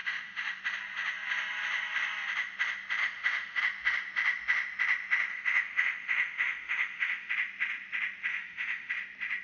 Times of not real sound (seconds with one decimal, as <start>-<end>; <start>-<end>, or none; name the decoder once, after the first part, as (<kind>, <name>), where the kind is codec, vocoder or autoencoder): 0.0-0.6 (autoencoder, DAC-VAE); 3.0-3.6; 5.3-7.3; 8.3-8.9